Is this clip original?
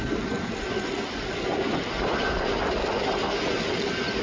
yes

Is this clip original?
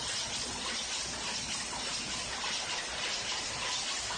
yes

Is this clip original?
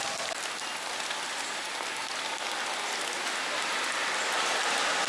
yes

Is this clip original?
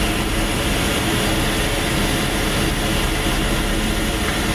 yes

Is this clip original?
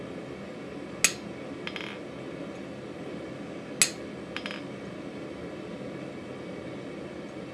yes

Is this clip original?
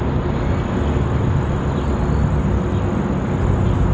yes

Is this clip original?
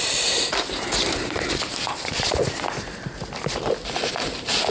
yes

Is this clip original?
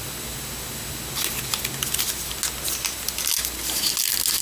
yes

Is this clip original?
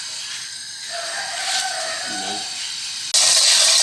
yes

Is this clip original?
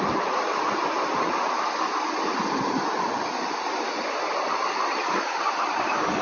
yes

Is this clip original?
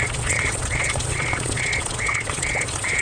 no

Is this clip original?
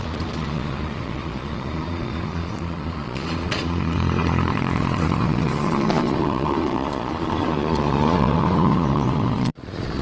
no